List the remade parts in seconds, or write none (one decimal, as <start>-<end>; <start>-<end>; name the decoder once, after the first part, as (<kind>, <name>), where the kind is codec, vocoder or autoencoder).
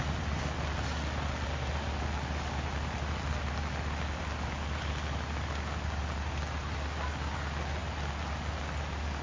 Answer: none